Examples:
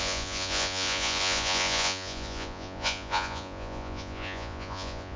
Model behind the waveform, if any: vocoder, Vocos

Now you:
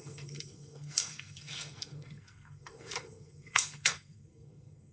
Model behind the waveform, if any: codec, SNAC